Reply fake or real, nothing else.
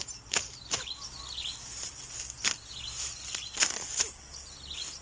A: real